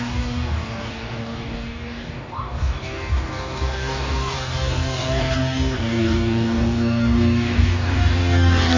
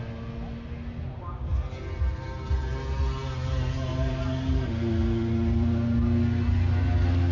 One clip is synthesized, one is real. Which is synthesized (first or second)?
first